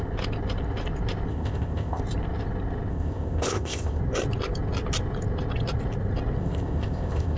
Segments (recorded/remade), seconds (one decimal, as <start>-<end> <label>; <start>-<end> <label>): 0.0-1.3 recorded; 1.3-2.0 remade; 2.0-2.9 recorded; 2.9-4.0 remade; 4.0-6.4 recorded; 6.4-7.4 remade